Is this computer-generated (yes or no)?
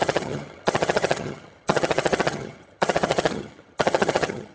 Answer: yes